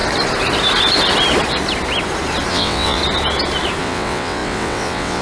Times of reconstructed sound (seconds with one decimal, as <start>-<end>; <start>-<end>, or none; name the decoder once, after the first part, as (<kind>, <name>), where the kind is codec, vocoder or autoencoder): 2.5-3.0 (vocoder, WaveNeXt); 3.8-5.2